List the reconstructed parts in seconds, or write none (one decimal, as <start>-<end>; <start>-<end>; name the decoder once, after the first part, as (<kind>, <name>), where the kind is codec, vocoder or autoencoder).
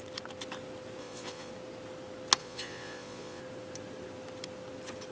1.0-1.5 (vocoder, Vocos); 2.4-3.4